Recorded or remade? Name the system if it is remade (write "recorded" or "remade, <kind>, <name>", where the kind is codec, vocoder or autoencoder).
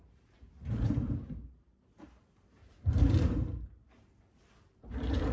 remade, vocoder, BigVGAN v2